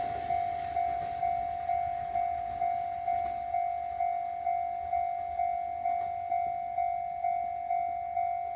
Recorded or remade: recorded